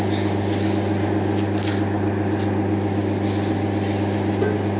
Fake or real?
real